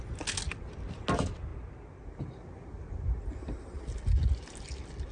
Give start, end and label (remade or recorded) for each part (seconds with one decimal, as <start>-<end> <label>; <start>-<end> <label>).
0.0-5.1 recorded